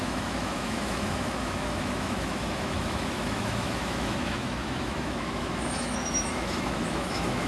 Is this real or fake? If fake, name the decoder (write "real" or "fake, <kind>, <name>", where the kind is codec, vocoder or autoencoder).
fake, autoencoder, DAC-VAE